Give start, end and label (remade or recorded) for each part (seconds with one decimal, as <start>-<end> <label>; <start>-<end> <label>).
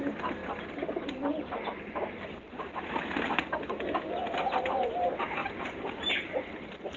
0.0-0.4 recorded; 0.4-4.6 remade; 4.6-7.0 recorded